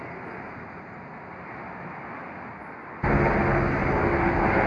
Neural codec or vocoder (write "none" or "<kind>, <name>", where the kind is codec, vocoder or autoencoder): none